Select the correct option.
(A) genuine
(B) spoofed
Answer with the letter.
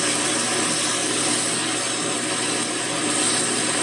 A